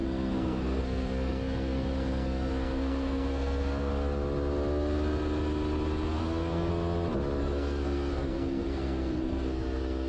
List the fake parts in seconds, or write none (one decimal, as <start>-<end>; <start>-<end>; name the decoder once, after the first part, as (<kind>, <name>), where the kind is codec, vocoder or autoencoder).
0.0-3.9 (codec, SNAC); 6.2-6.7; 7.4-10.1